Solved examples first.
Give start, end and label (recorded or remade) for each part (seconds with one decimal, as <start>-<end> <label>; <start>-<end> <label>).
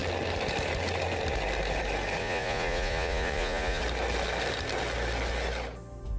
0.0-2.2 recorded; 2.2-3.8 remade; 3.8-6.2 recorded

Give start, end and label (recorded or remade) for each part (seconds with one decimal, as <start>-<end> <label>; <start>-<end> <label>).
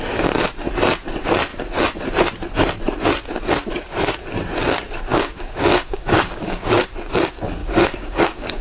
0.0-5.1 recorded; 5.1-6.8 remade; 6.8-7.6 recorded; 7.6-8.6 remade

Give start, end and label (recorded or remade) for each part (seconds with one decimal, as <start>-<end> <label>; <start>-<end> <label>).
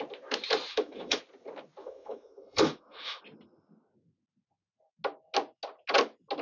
0.0-0.7 recorded; 0.7-1.2 remade; 1.2-1.8 recorded; 1.8-3.2 remade; 3.2-6.4 recorded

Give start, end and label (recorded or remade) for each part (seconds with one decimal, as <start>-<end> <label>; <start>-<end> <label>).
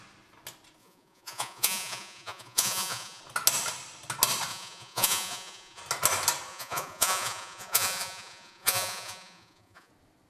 0.0-0.8 recorded; 0.8-3.2 remade; 3.2-4.5 recorded; 4.5-5.8 remade; 5.8-6.5 recorded; 6.5-9.9 remade; 9.9-10.3 recorded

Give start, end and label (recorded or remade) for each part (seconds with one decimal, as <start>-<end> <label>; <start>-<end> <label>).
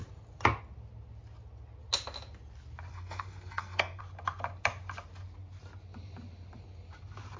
0.0-2.9 recorded; 2.9-4.0 remade; 4.0-7.4 recorded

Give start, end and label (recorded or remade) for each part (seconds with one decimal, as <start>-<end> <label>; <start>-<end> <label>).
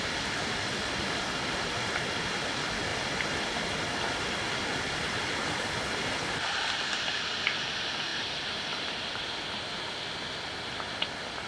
0.0-11.5 recorded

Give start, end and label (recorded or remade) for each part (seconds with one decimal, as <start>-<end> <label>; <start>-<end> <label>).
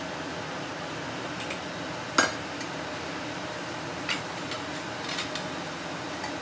0.0-6.4 recorded